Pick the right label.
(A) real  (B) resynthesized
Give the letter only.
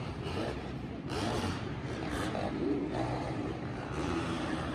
B